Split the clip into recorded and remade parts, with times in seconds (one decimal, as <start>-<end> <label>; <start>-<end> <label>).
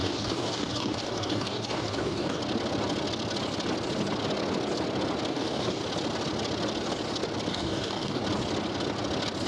0.0-2.4 remade; 2.4-5.3 recorded; 5.3-5.8 remade; 5.8-7.5 recorded; 7.5-8.2 remade; 8.2-9.5 recorded